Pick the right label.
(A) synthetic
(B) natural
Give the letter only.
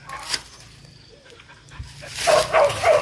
B